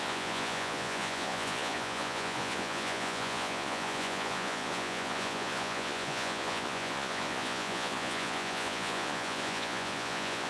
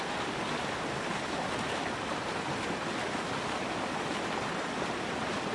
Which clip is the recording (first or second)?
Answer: second